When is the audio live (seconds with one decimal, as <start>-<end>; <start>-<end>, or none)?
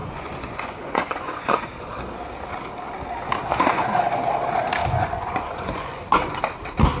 1.9-3.7; 4.3-4.8; 6.4-7.0